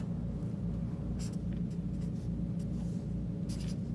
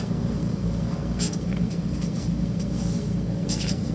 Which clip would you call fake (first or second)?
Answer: second